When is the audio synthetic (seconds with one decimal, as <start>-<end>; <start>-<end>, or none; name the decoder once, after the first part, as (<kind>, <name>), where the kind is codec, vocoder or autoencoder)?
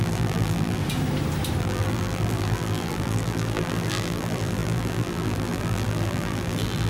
0.0-0.8 (vocoder, BigVGAN v2); 1.6-6.9